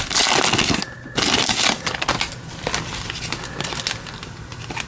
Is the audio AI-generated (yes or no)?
no